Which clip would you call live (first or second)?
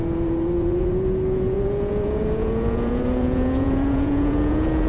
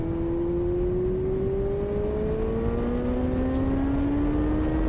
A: second